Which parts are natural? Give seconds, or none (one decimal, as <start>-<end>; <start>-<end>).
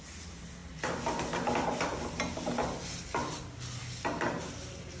0.0-5.0